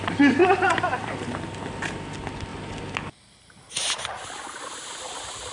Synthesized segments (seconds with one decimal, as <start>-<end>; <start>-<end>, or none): 0.4-1.4